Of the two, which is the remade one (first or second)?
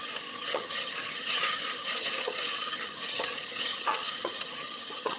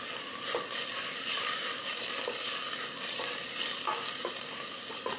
first